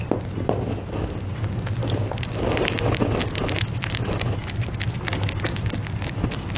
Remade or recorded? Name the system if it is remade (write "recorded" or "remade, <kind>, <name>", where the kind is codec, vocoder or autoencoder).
recorded